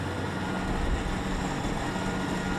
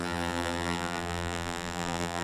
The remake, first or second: second